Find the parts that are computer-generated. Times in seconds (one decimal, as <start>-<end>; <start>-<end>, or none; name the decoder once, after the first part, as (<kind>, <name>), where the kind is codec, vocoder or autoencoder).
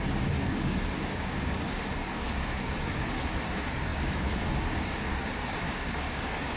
0.0-6.6 (codec, DAC)